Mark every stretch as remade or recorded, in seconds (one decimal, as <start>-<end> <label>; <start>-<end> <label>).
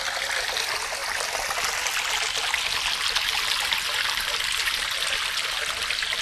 0.0-6.2 recorded